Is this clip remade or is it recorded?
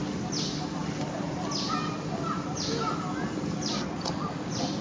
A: recorded